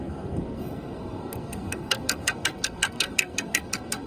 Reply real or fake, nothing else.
fake